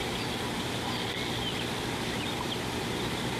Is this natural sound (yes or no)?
yes